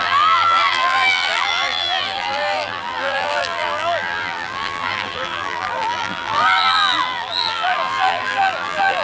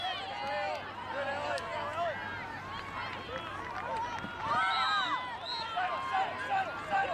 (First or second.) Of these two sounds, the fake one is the first